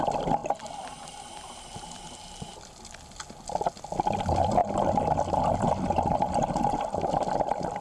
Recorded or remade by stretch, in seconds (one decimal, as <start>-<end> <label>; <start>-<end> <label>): 0.0-7.8 recorded

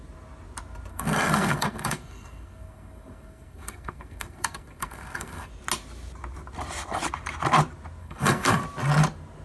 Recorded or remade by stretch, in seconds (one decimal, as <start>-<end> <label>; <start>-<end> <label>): 0.0-0.9 recorded; 0.9-5.5 remade; 5.5-8.0 recorded; 8.0-8.6 remade; 8.6-9.4 recorded

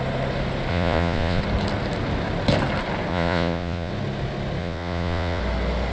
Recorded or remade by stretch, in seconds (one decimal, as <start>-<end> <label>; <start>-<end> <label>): 0.0-0.7 recorded; 0.7-1.4 remade; 1.4-3.1 recorded; 3.1-3.9 remade; 3.9-4.6 recorded; 4.6-5.4 remade; 5.4-5.9 recorded

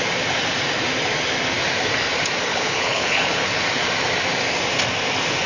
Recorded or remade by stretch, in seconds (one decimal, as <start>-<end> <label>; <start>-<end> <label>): 0.0-2.5 recorded; 2.5-3.6 remade; 3.6-5.5 recorded

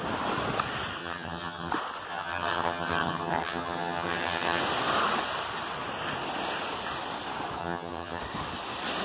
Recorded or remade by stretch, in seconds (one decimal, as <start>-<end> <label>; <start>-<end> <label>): 0.0-1.0 recorded; 1.0-1.7 remade; 1.7-2.1 recorded; 2.1-4.6 remade; 4.6-7.6 recorded; 7.6-8.2 remade; 8.2-9.0 recorded